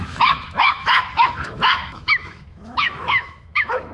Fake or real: fake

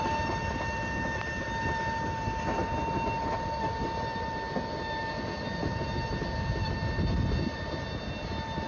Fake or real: real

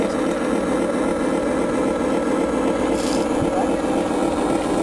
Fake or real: real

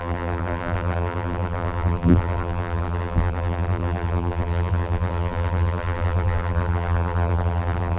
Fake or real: fake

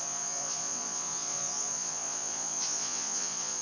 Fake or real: fake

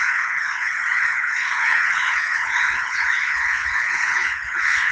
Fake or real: fake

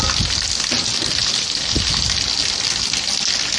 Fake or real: real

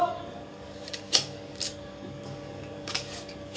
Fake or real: fake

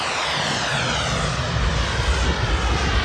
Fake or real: real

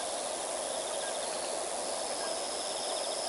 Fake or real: real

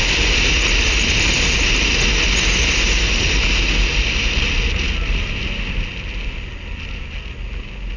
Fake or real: real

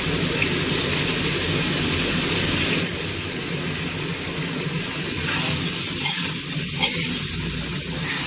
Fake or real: real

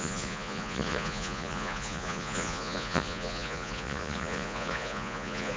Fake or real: fake